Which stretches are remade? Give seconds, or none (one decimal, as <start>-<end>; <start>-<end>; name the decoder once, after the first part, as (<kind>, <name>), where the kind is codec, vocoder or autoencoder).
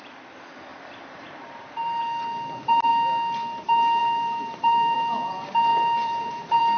0.7-2.0 (vocoder, BigVGAN v2); 4.0-5.0; 5.7-6.8